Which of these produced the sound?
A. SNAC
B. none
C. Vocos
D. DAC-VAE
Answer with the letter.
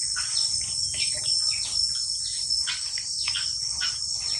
B